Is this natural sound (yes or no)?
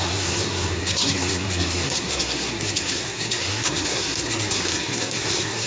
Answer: no